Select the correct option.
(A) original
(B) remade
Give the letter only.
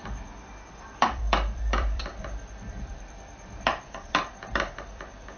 B